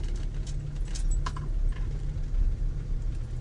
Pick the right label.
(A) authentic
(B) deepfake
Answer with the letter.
A